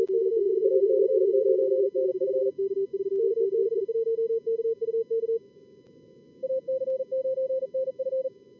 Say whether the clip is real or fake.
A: real